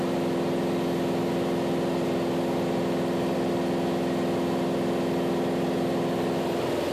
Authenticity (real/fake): real